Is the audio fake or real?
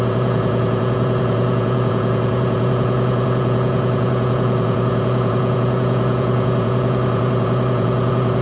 fake